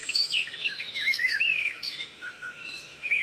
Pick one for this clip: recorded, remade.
remade